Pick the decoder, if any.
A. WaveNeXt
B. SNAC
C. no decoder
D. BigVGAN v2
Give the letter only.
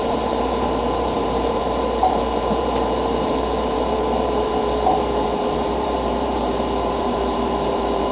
D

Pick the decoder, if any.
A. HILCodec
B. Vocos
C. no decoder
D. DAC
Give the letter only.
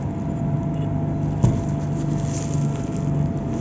C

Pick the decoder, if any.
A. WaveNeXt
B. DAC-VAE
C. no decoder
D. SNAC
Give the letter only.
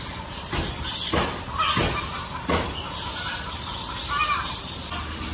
C